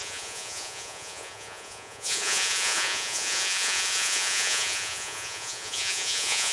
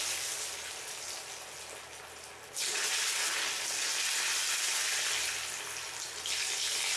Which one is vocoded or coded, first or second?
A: first